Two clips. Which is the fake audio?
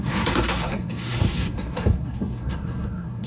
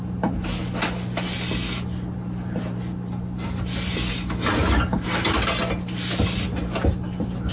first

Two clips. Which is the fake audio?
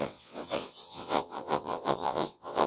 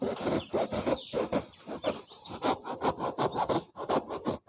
first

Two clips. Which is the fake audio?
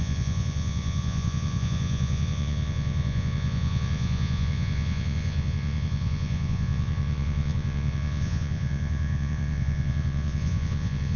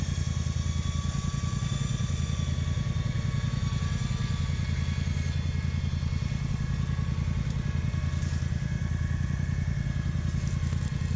first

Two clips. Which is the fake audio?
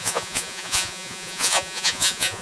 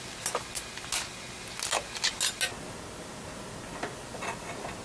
first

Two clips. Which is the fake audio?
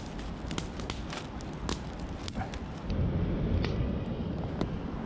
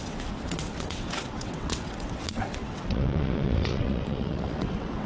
second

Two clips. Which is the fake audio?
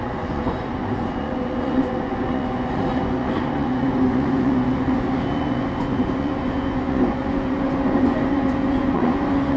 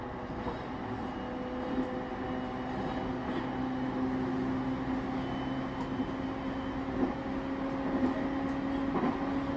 first